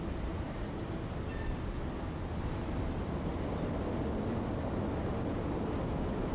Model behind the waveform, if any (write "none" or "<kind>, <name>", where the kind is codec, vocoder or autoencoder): none